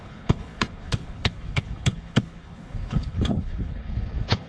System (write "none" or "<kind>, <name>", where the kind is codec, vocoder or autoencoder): codec, HILCodec